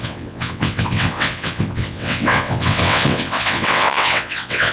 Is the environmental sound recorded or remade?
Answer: remade